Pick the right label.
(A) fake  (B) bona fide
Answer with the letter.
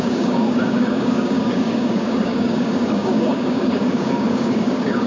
A